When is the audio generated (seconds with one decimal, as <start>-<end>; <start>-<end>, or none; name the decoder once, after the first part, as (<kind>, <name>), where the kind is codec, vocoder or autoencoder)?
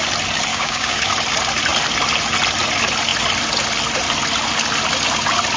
0.5-1.1 (codec, DAC)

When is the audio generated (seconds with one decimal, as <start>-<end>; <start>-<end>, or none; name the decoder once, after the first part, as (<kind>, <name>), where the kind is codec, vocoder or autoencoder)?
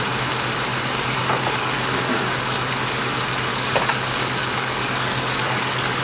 0.7-2.7 (codec, DAC); 3.5-6.0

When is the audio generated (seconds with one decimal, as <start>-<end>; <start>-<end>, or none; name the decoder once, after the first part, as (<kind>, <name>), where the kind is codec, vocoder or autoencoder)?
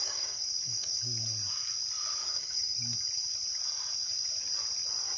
0.0-1.0 (codec, DAC); 2.2-2.8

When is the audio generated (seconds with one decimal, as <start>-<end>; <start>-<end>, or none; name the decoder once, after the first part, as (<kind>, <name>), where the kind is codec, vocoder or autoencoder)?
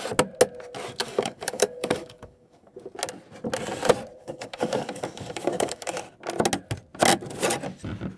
1.0-2.7 (codec, DAC); 4.2-6.0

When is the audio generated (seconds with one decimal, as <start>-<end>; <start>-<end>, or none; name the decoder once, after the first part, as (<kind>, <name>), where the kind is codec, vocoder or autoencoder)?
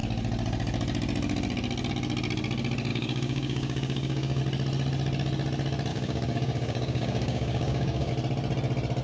2.9-4.4 (codec, DAC); 5.9-8.1